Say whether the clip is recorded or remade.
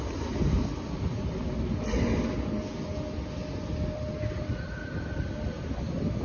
recorded